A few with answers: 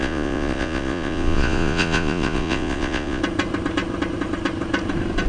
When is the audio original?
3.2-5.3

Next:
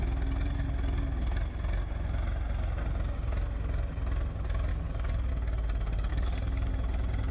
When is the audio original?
0.0-4.7; 5.3-6.1; 6.7-7.3

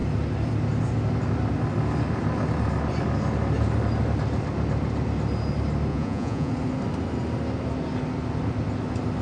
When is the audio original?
0.0-5.9; 6.5-9.2

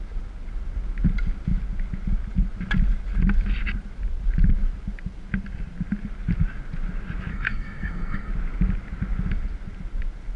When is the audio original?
0.0-7.3; 8.3-10.4

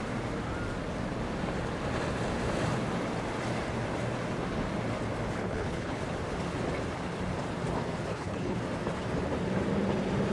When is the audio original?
0.0-5.4; 6.0-8.1; 8.6-10.3

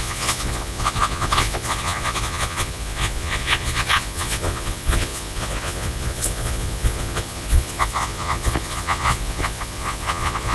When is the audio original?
none

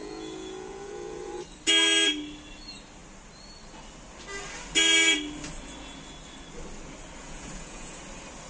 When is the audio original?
1.4-7.2; 8.0-8.5